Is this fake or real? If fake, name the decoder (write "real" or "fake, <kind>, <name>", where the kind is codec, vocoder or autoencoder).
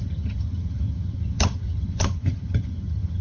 fake, vocoder, HiFi-GAN